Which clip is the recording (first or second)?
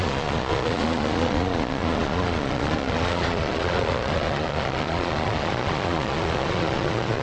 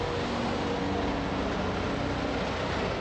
second